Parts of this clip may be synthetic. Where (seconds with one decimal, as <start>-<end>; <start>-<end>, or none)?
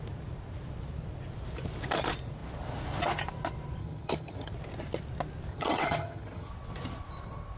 3.8-4.5; 5.5-6.5